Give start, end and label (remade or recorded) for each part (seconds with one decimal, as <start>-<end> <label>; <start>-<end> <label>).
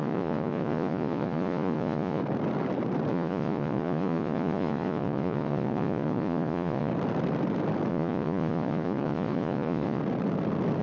0.0-2.2 remade; 2.2-3.1 recorded; 3.1-6.9 remade; 6.9-7.9 recorded; 7.9-10.0 remade; 10.0-10.8 recorded